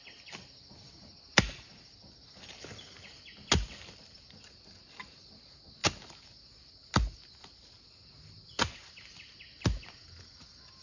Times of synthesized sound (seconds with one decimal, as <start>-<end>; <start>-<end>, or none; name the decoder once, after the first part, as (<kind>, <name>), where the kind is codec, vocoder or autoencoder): none